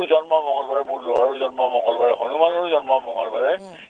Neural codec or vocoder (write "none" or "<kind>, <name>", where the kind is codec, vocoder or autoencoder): vocoder, Vocos